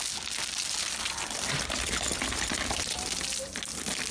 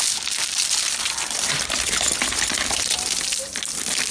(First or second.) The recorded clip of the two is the first